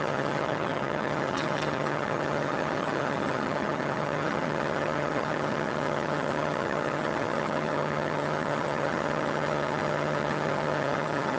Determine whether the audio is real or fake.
fake